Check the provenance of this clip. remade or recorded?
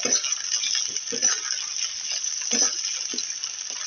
recorded